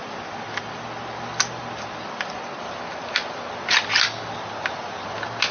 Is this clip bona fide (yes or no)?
yes